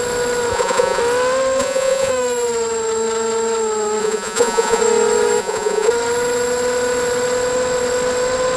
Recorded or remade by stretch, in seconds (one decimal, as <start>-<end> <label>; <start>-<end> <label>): 0.0-0.5 recorded; 0.5-1.0 remade; 1.0-1.6 recorded; 1.6-2.1 remade; 2.1-4.0 recorded; 4.0-4.8 remade; 4.8-5.4 recorded; 5.4-5.9 remade; 5.9-8.6 recorded